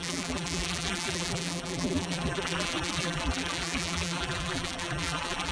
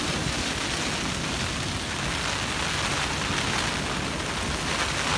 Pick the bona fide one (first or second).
second